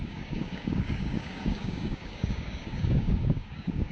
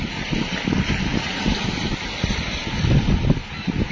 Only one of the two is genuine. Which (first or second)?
second